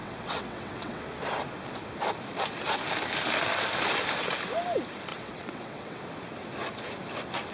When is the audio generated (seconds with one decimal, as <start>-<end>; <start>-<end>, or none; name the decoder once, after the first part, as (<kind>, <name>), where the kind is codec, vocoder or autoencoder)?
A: 0.0-1.0 (vocoder, WaveNeXt); 5.1-6.0